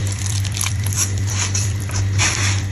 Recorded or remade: remade